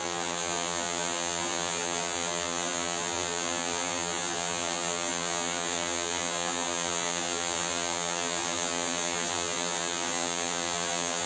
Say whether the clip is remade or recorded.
remade